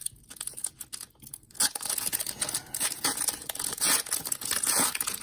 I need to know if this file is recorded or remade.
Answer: remade